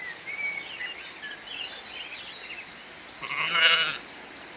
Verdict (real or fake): real